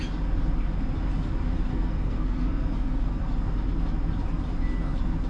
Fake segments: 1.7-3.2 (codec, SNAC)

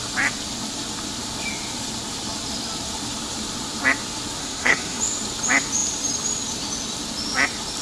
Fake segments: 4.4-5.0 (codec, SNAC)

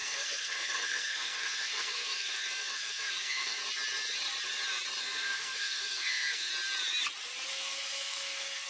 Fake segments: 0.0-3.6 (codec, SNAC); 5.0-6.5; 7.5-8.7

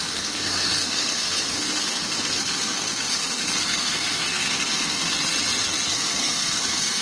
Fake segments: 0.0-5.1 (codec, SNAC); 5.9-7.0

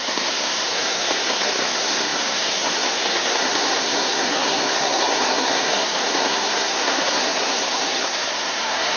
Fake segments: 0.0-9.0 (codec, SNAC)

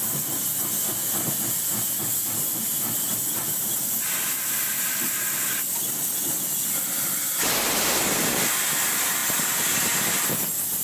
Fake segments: none

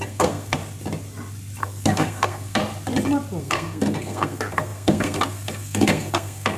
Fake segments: 0.0-0.6 (codec, SNAC); 1.6-2.6; 3.4-6.6

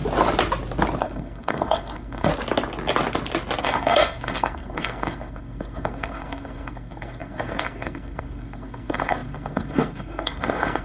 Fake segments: 1.0-2.3 (codec, SNAC); 3.6-10.8